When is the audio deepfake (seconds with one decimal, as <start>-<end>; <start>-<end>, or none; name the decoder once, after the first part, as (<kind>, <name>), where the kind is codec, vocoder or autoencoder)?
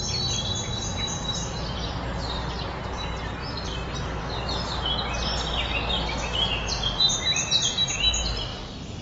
3.4-4.2 (vocoder, BigVGAN v2); 8.5-9.0